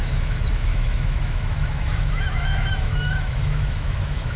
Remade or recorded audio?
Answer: remade